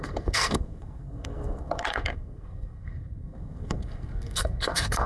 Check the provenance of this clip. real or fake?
fake